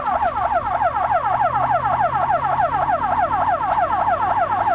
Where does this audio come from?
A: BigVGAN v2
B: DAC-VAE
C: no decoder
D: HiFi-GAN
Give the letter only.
C